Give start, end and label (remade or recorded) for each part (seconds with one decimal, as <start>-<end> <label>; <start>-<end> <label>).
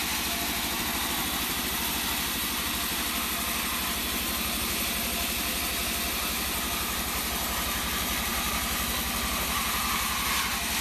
0.0-10.8 recorded